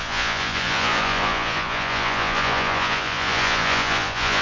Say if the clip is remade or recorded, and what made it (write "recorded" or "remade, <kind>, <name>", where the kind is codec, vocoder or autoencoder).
remade, vocoder, Vocos